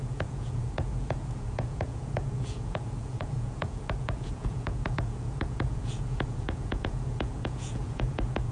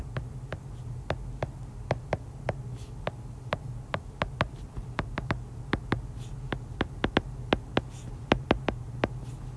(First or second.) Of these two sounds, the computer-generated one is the first